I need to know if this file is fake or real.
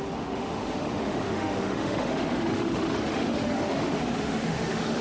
fake